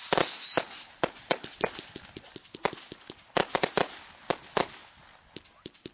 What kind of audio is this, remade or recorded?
recorded